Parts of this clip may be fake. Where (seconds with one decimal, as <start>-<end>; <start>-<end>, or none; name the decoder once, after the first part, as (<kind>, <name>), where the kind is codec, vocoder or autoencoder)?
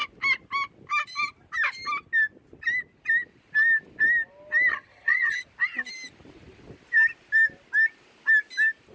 4.7-5.4 (vocoder, HiFi-GAN)